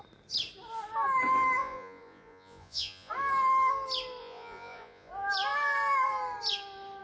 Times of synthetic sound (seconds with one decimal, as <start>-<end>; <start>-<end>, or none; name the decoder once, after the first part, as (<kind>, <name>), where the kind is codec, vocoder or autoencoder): 1.6-3.1 (vocoder, Vocos); 4.2-5.1